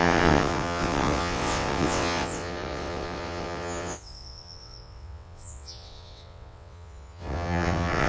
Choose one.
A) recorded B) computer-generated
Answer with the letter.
B